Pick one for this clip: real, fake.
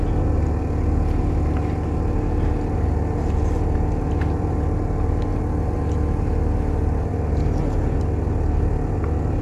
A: real